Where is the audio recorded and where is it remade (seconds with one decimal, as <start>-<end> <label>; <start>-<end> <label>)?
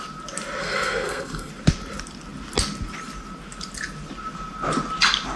0.0-0.6 recorded; 0.6-1.5 remade; 1.5-5.4 recorded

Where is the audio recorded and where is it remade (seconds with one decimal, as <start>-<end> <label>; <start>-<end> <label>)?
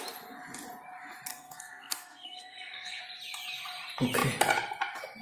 0.0-1.3 recorded; 1.3-3.0 remade; 3.0-5.2 recorded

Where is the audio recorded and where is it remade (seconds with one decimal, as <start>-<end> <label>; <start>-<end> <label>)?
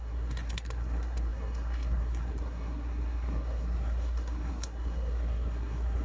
0.0-6.0 remade